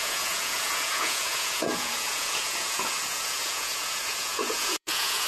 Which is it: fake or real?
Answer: fake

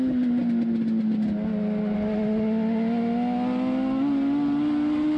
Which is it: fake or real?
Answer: real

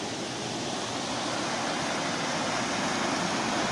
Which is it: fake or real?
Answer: real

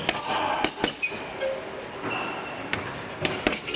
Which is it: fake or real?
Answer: real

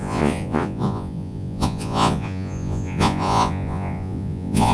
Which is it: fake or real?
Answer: fake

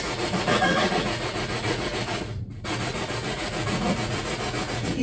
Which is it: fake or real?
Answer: fake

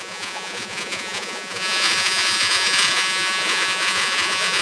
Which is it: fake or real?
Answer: fake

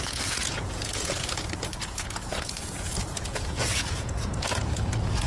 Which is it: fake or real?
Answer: fake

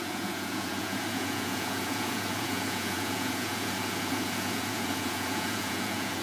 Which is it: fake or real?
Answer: fake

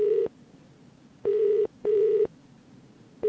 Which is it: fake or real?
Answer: fake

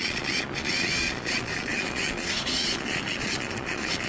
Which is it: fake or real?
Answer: fake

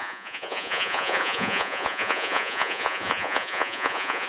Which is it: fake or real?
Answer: fake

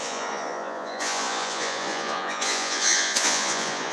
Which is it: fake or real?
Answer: fake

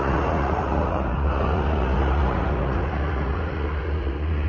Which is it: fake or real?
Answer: fake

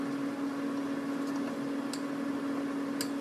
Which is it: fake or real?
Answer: real